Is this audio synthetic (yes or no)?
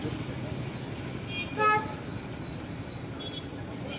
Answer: no